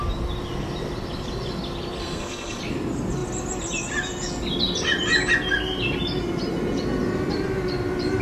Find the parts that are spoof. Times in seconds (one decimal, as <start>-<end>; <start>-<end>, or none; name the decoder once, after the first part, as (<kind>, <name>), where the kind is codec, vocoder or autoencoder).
2.0-2.6 (codec, SNAC)